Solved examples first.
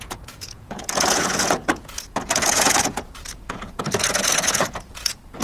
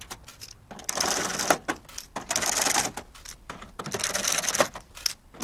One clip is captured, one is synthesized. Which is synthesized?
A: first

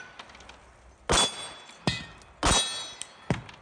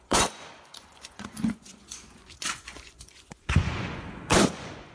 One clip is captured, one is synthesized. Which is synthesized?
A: second